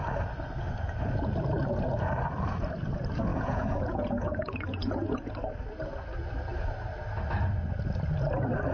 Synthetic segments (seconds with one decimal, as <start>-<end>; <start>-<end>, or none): 3.3-5.3